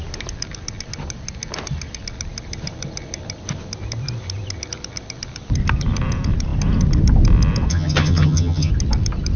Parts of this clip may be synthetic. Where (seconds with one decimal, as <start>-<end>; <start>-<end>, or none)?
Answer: 7.7-8.7

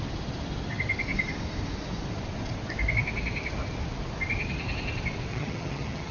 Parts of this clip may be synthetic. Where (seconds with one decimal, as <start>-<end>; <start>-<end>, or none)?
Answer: 5.3-6.1

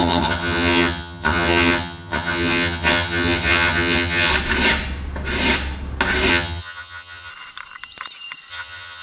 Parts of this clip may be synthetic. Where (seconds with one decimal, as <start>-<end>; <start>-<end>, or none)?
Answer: 0.0-4.3; 6.3-7.3; 8.5-9.0

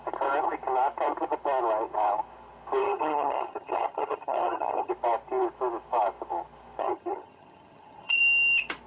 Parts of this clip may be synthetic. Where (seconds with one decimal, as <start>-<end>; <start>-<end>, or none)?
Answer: 2.8-4.9; 6.8-8.2